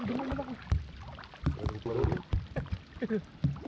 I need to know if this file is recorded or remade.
recorded